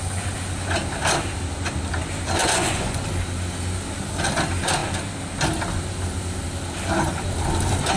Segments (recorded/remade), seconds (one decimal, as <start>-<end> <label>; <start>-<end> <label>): 0.0-2.4 recorded; 2.4-3.0 remade; 3.0-8.0 recorded